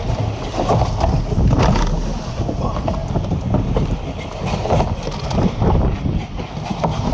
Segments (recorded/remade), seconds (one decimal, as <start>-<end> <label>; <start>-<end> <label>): 0.0-7.1 recorded